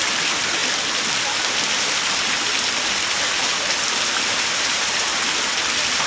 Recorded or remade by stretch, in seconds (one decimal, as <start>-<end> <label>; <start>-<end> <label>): 0.0-0.6 remade; 0.6-4.3 recorded; 4.3-5.1 remade; 5.1-6.1 recorded